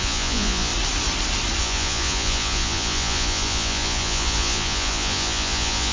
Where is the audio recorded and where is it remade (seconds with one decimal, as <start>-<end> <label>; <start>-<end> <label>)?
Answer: 0.0-0.7 remade; 0.7-1.6 recorded; 1.6-5.9 remade